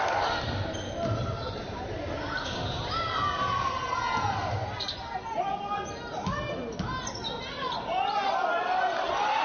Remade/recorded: recorded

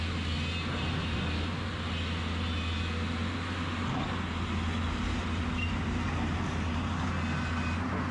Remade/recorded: recorded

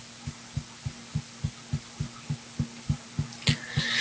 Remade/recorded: recorded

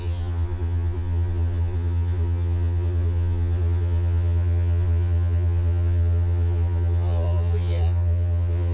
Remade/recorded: remade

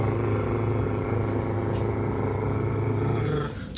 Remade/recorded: recorded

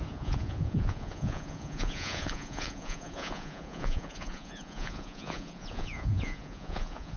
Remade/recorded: remade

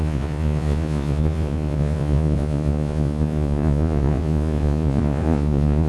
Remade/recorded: remade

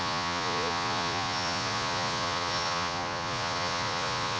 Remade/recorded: remade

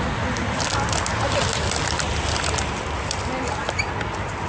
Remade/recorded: recorded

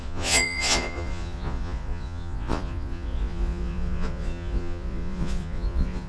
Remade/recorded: remade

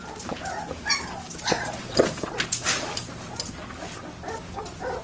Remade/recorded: recorded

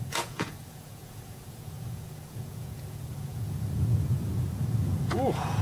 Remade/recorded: remade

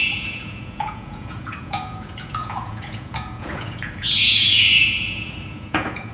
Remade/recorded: remade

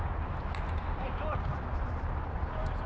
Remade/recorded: recorded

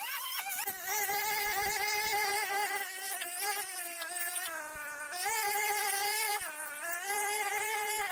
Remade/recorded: remade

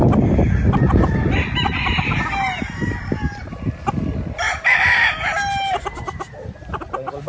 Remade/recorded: recorded